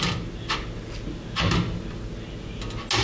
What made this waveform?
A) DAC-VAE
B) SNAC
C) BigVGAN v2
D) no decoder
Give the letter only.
D